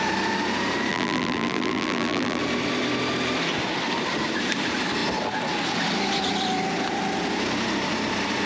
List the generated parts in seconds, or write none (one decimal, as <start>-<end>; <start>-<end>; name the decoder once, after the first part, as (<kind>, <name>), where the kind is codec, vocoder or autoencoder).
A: 0.9-2.4 (vocoder, BigVGAN v2)